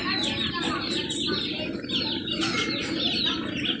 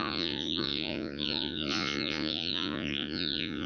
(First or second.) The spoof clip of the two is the second